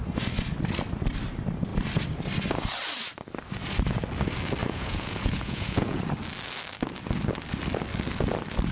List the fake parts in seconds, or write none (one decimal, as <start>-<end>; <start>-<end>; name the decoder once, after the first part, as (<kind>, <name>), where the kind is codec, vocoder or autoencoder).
4.6-6.0 (vocoder, Vocos)